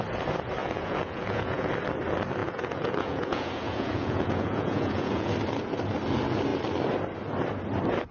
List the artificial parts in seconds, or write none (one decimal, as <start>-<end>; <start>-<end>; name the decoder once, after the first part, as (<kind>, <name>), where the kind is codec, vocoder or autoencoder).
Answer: 0.6-1.7 (vocoder, Vocos); 2.4-5.3